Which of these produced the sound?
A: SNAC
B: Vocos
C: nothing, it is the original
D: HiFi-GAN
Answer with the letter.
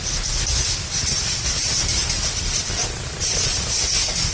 C